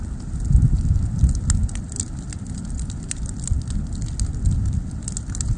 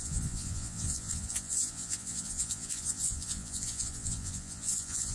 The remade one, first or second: second